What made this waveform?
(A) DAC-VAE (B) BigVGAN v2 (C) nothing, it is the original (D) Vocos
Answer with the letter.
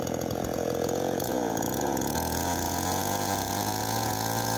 D